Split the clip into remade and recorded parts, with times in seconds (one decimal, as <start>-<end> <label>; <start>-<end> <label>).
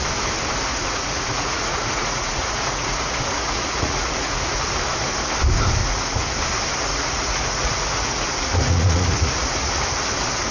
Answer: 0.0-0.7 recorded; 0.7-4.7 remade; 4.7-5.8 recorded; 5.8-6.4 remade; 6.4-6.9 recorded; 6.9-9.6 remade; 9.6-10.5 recorded